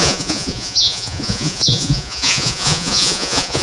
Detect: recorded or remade remade